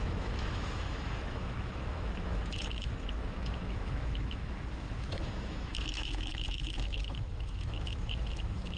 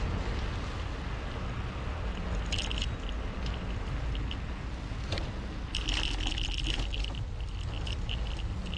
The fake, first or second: first